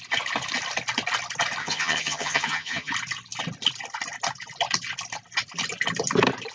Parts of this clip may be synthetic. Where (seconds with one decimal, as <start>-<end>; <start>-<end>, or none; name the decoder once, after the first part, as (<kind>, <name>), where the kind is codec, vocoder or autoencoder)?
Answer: 1.6-2.9 (vocoder, HiFi-GAN)